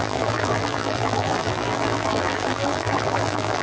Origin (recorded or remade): remade